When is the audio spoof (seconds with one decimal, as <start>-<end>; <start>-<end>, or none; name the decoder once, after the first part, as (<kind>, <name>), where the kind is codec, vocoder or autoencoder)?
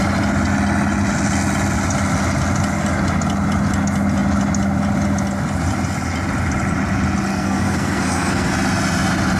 7.3-8.5 (codec, SNAC)